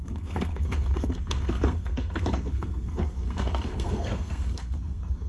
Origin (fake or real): fake